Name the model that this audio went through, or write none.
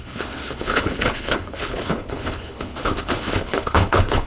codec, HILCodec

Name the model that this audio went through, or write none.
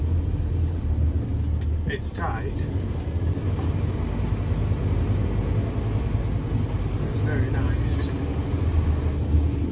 none